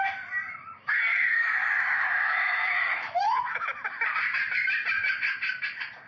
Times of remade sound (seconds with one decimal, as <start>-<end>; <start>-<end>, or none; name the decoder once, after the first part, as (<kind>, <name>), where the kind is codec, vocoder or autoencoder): 1.1-4.1 (autoencoder, DAC-VAE)